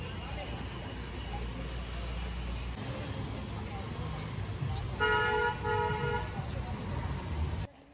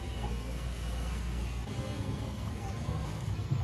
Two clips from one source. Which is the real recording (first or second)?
first